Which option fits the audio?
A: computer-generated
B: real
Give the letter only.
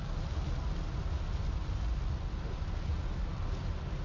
B